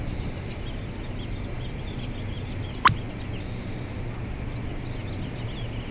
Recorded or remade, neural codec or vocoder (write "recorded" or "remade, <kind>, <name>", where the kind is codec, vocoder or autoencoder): recorded